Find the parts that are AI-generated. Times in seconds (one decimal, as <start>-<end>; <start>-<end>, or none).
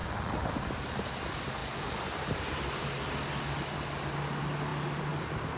0.0-1.0; 1.6-4.0